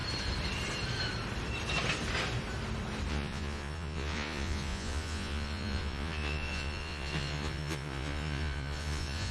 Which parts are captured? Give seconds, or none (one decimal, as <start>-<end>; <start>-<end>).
0.0-3.1